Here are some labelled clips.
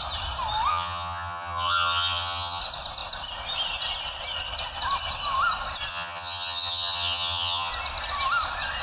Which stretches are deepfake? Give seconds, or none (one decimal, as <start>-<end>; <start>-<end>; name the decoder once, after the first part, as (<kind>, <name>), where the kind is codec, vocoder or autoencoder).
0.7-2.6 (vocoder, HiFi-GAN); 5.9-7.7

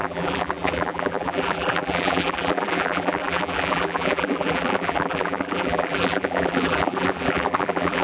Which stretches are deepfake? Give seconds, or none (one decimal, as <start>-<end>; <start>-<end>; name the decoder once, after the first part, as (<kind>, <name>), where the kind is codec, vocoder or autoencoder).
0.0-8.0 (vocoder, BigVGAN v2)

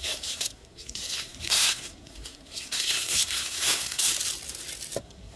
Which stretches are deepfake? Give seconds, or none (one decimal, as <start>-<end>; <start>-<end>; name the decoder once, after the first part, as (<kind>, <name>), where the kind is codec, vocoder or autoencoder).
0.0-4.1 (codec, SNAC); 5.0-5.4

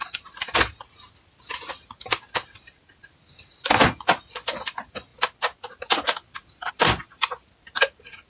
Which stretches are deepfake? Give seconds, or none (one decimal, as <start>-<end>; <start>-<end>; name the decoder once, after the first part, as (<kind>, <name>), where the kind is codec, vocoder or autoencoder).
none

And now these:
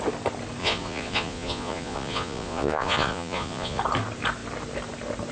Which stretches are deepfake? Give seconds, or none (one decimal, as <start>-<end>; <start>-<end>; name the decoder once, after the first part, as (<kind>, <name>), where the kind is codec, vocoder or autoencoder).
0.6-3.8 (vocoder, Vocos)